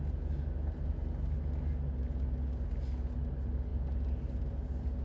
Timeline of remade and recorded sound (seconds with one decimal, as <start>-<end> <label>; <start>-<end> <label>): 0.0-5.0 recorded